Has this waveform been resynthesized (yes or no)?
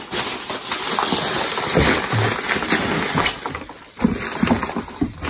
no